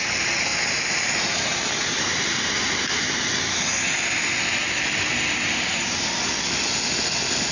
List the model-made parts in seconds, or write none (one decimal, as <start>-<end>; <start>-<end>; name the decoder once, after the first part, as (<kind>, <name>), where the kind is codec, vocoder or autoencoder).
0.5-3.3 (vocoder, BigVGAN v2); 5.7-6.2